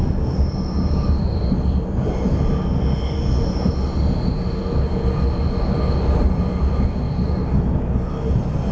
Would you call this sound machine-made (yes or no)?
no